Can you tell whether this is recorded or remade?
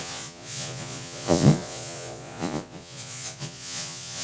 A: remade